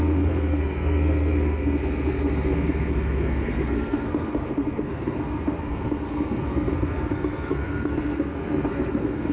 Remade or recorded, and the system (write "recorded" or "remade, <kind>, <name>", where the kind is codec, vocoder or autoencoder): remade, codec, SNAC